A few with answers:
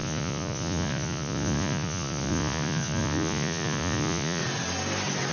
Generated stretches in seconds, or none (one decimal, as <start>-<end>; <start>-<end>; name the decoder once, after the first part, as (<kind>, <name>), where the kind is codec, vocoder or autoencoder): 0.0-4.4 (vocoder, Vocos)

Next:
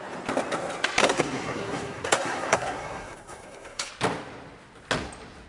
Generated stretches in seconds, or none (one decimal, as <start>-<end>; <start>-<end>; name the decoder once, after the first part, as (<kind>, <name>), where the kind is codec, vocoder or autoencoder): 1.0-3.9 (codec, SNAC)

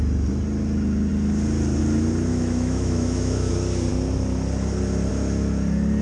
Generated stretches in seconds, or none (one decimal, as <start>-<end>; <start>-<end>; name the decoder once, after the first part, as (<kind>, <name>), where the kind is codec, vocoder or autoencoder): 2.3-3.5 (autoencoder, DAC-VAE)